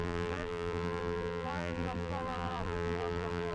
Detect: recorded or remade remade